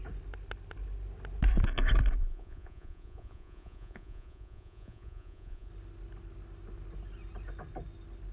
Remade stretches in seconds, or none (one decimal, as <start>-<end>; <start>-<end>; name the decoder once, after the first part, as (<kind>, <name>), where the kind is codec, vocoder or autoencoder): 2.2-5.7 (vocoder, Vocos)